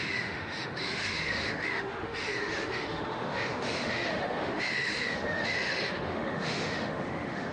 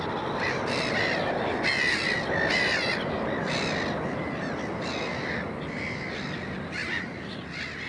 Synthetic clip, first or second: first